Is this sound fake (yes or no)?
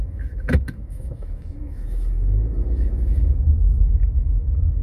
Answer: yes